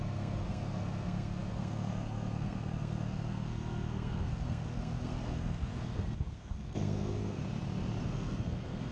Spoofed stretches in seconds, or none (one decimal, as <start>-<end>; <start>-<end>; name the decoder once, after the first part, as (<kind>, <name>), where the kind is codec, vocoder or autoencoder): 0.0-7.4 (codec, SNAC); 8.0-8.9